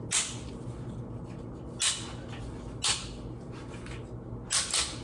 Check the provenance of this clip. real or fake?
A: real